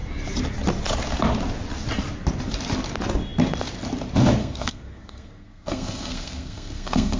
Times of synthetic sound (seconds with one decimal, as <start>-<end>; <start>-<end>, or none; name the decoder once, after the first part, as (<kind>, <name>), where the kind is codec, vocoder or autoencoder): 4.4-7.2 (codec, SNAC)